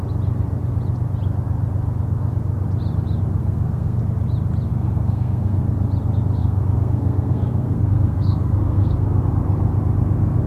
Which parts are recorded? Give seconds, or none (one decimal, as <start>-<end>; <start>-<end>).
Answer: 0.0-3.4; 4.0-4.7; 5.6-6.4; 9.2-10.5